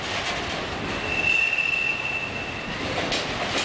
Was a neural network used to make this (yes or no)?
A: no